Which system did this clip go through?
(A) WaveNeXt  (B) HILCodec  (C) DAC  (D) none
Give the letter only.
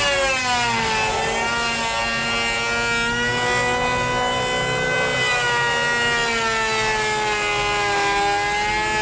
D